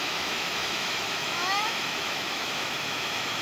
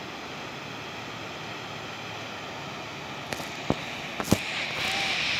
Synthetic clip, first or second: first